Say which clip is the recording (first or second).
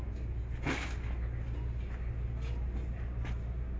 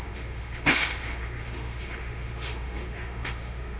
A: first